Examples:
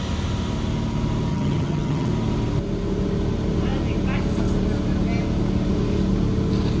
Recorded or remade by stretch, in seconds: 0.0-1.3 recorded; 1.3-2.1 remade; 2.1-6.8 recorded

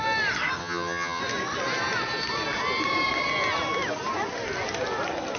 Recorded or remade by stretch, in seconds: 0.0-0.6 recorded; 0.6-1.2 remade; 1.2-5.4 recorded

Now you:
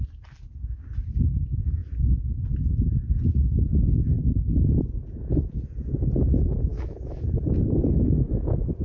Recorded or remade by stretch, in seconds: 0.0-8.8 recorded

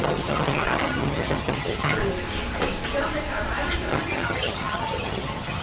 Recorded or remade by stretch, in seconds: 0.0-2.0 remade; 2.0-3.9 recorded; 3.9-5.6 remade